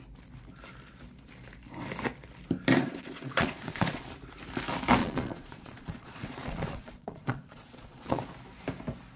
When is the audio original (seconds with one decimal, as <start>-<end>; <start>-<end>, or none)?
0.0-2.8; 4.0-5.0; 8.2-9.2